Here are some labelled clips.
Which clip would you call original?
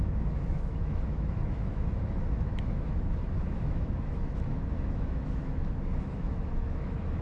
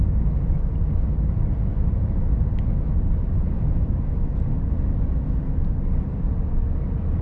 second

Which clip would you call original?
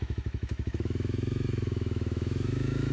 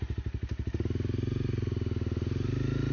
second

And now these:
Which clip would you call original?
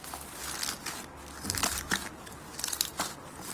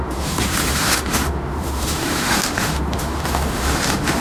first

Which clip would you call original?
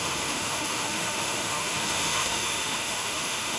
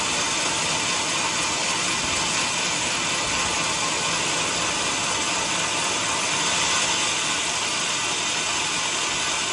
second